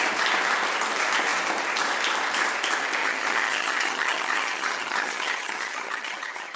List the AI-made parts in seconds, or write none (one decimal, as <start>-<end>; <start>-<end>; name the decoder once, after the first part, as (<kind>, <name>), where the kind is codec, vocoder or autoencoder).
3.0-6.6 (vocoder, HiFi-GAN)